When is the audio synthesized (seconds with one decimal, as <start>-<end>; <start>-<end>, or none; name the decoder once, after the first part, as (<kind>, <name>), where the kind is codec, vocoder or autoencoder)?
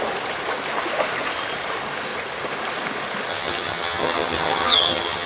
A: 3.3-5.3 (vocoder, HiFi-GAN)